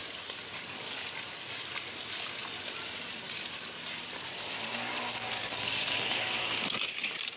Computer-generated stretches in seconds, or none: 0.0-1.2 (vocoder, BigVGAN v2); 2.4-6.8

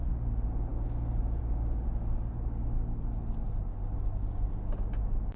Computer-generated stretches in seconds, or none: none

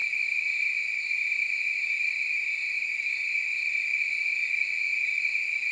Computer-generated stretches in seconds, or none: 0.0-3.4 (vocoder, BigVGAN v2)

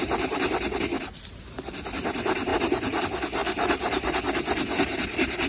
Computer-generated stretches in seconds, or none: 2.5-3.0 (vocoder, BigVGAN v2); 3.4-4.2

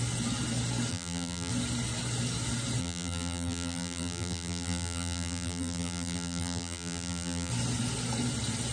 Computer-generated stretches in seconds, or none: 0.9-1.5 (vocoder, BigVGAN v2); 2.8-7.5

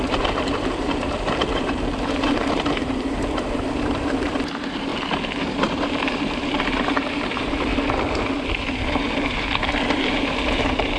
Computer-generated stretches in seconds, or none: 0.0-4.9 (vocoder, BigVGAN v2); 5.6-7.7; 9.9-11.0

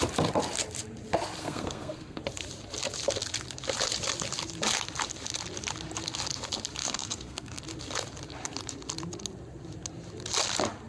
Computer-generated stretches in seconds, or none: 1.4-2.2 (codec, SNAC); 6.8-7.6